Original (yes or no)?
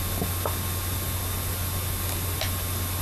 yes